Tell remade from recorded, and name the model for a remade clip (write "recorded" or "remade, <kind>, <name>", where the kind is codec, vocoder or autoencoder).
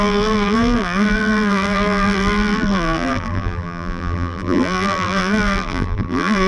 remade, vocoder, BigVGAN v2